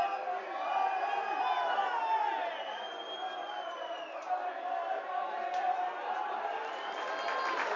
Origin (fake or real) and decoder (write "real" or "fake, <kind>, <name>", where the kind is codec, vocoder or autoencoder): real